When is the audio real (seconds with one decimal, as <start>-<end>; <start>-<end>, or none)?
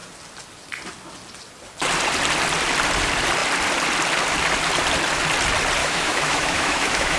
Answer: 0.0-5.8